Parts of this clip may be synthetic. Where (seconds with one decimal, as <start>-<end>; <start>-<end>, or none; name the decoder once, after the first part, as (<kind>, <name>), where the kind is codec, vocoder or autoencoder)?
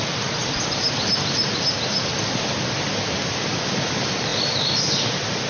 none